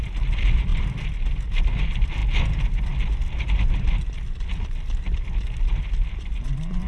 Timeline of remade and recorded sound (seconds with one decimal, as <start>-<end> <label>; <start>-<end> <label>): 0.0-0.7 remade; 0.7-1.8 recorded; 1.8-2.2 remade; 2.2-3.4 recorded; 3.4-6.9 remade